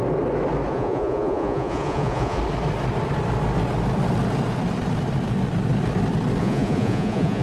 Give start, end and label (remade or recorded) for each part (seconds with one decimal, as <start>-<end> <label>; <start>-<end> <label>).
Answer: 0.0-0.7 recorded; 0.7-2.4 remade; 2.4-6.4 recorded; 6.4-7.4 remade